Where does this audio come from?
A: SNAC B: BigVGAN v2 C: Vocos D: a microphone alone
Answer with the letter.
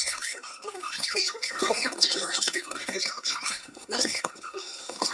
A